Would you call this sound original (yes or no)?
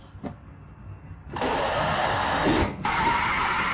yes